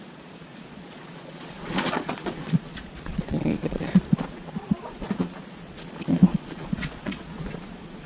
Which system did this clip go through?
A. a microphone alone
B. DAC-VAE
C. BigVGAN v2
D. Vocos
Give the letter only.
D